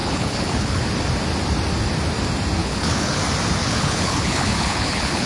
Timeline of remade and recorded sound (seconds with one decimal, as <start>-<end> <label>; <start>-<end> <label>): 0.0-0.8 remade; 0.8-2.6 recorded; 2.6-3.2 remade; 3.2-3.6 recorded; 3.6-5.3 remade